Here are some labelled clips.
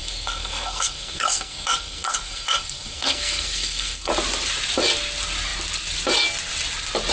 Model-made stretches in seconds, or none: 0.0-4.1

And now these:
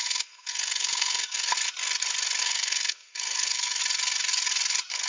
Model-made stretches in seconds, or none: 0.0-1.5; 2.4-3.8

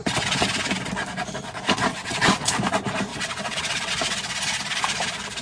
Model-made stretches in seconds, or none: 1.9-2.5; 3.1-3.9

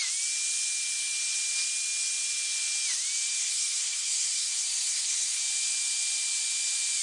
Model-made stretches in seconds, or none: 3.4-5.4